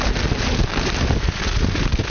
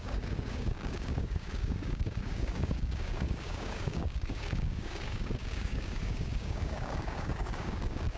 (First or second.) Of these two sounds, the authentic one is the first